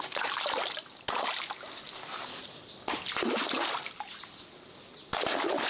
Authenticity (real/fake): real